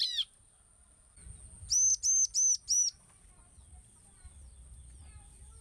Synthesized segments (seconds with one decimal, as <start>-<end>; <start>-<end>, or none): none